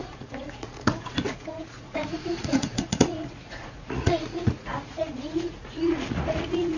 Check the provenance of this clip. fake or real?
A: fake